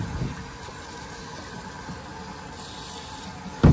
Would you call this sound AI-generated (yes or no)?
no